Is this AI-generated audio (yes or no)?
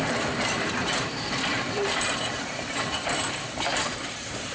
yes